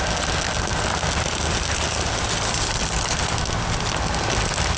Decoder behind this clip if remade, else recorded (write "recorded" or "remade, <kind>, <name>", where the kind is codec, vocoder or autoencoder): recorded